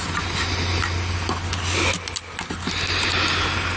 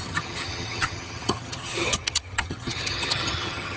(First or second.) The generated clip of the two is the second